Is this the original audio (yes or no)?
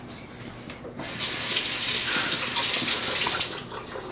yes